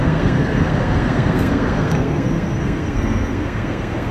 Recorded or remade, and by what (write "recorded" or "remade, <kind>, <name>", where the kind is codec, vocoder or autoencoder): remade, codec, SNAC